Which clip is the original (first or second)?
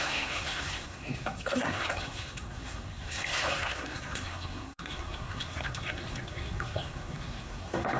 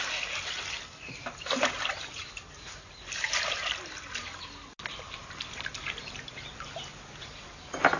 second